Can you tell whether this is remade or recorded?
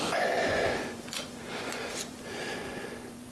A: remade